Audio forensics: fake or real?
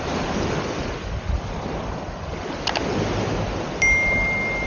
real